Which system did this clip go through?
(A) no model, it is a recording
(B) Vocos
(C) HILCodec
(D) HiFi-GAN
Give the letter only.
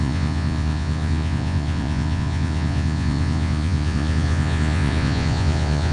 B